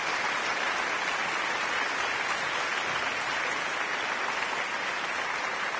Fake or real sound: real